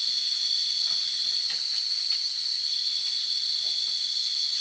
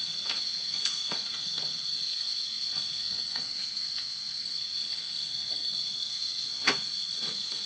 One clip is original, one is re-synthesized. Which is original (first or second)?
first